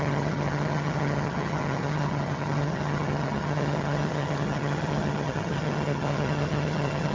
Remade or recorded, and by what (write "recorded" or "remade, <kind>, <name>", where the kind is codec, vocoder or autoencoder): remade, vocoder, HiFi-GAN